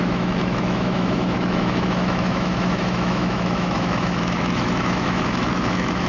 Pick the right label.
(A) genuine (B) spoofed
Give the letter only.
B